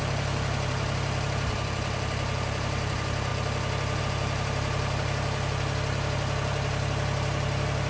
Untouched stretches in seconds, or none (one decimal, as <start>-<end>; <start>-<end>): 3.3-4.0